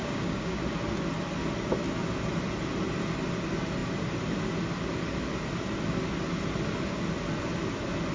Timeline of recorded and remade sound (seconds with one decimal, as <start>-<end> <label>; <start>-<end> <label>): 0.0-0.6 remade; 0.6-8.1 recorded